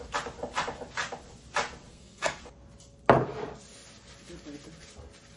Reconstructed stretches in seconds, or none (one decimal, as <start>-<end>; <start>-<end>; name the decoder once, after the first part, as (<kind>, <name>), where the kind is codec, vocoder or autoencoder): 1.9-2.4 (codec, SNAC)